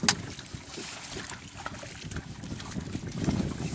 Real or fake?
real